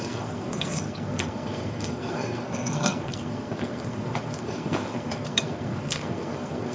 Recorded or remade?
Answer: remade